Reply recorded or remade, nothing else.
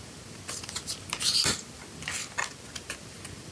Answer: recorded